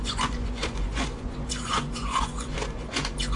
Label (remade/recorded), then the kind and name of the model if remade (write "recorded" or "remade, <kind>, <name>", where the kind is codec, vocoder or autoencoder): remade, vocoder, Vocos